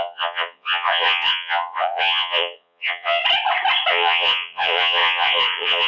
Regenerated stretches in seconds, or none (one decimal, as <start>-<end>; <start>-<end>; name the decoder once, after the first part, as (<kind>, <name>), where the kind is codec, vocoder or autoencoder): 0.0-3.2 (vocoder, Vocos); 3.9-5.9